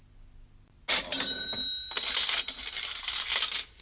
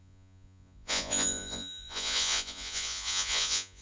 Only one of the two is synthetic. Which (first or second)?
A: second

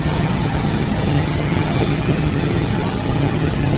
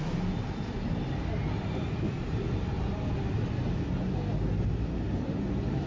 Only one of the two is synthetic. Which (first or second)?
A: first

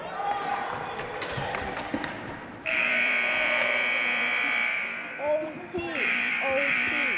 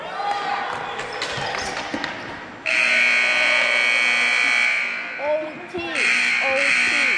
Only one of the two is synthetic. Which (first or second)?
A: first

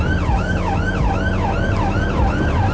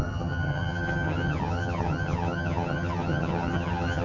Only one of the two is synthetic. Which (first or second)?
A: second